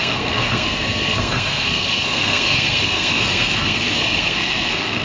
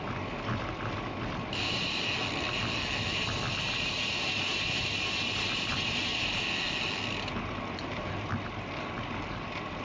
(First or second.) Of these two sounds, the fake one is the first